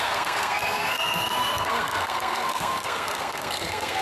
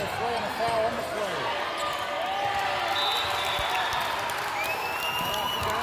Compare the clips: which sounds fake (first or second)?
first